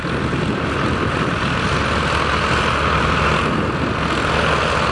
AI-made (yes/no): no